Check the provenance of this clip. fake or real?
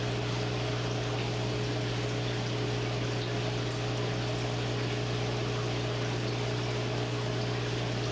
real